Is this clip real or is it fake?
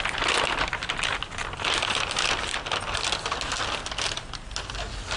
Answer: real